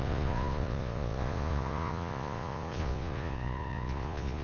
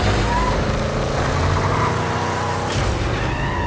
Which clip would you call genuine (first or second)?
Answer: second